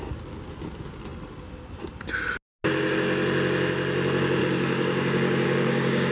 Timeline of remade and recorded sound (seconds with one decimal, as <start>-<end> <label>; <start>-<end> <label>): 0.0-4.4 recorded; 4.4-6.1 remade